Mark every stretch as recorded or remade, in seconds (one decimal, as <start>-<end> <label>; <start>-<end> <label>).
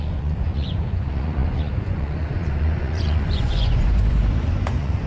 0.0-5.1 remade